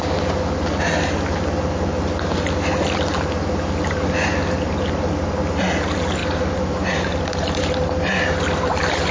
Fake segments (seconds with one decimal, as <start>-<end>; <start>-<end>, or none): none